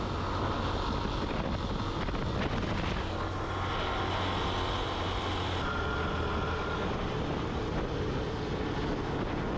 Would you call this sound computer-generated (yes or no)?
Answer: no